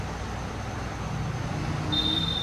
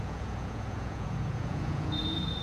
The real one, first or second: first